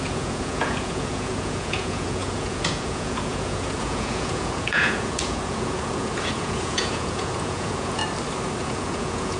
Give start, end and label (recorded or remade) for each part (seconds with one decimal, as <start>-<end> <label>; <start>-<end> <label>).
0.0-8.0 remade; 8.0-8.6 recorded; 8.6-9.4 remade